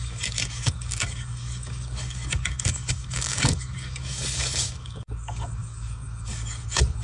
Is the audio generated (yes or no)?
yes